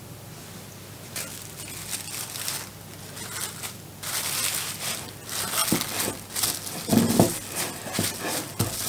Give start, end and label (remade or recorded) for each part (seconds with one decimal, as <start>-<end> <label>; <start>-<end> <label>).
0.0-8.9 recorded